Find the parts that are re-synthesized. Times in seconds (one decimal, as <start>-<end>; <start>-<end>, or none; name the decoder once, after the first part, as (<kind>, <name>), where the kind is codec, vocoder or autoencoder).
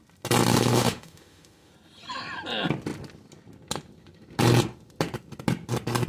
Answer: 0.5-1.7 (autoencoder, DAC-VAE)